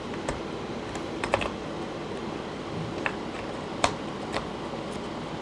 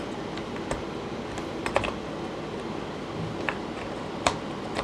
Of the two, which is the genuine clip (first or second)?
second